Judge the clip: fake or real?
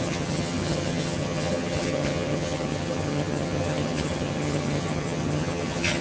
fake